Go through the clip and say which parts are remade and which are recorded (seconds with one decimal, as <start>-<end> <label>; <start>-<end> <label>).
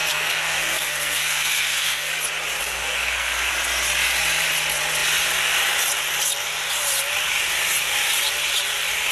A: 0.0-2.1 remade; 2.1-2.6 recorded; 2.6-3.5 remade; 3.5-9.1 recorded